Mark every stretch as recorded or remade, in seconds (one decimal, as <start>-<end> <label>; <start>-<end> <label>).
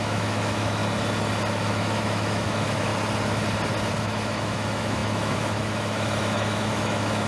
0.0-0.8 remade; 0.8-1.7 recorded; 1.7-2.9 remade; 2.9-4.0 recorded; 4.0-7.3 remade